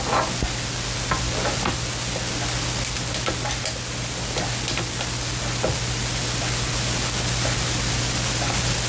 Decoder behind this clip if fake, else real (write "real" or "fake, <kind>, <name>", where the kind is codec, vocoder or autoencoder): real